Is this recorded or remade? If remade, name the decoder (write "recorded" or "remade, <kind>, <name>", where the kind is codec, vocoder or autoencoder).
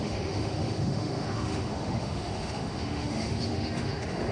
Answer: remade, autoencoder, DAC-VAE